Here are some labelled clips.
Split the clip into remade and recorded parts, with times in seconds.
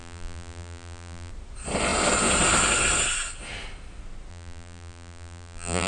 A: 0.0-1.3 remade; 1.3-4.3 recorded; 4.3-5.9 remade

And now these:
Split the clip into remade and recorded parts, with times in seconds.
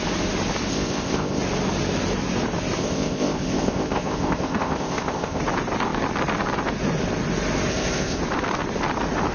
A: 0.0-0.7 recorded; 0.7-1.4 remade; 1.4-2.8 recorded; 2.8-5.4 remade; 5.4-7.7 recorded; 7.7-8.2 remade; 8.2-9.3 recorded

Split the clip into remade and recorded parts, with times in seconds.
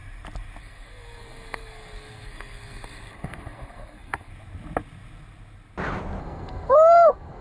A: 0.0-0.6 recorded; 0.6-4.3 remade; 4.3-6.2 recorded; 6.2-7.4 remade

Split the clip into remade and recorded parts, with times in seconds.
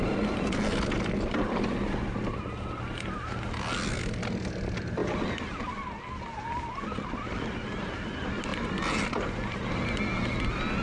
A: 0.0-10.8 recorded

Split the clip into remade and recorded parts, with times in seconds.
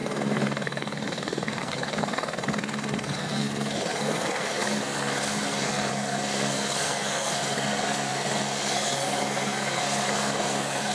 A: 0.0-10.9 remade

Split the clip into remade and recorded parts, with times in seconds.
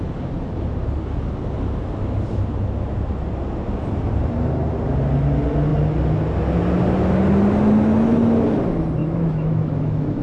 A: 0.0-9.0 recorded; 9.0-10.2 remade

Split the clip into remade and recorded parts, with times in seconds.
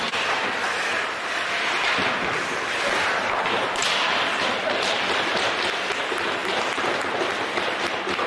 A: 0.0-8.3 recorded